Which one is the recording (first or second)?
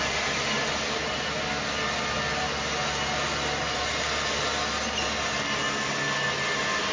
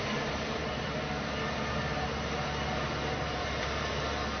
first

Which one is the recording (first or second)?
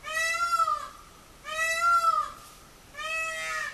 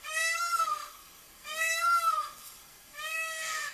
first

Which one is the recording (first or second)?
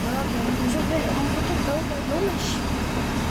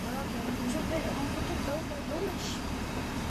first